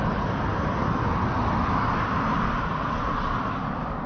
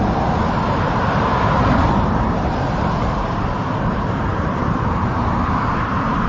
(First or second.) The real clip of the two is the first